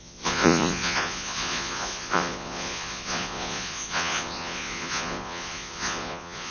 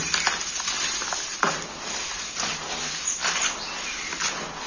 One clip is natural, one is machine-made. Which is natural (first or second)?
second